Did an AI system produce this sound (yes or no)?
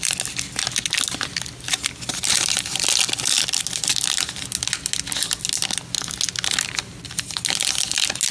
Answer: no